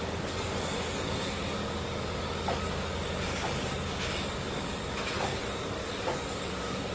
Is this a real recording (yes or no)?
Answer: no